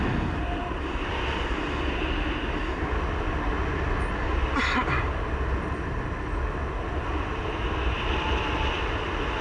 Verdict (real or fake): real